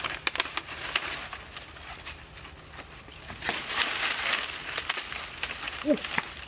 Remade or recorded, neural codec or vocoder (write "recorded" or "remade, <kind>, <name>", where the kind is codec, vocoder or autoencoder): recorded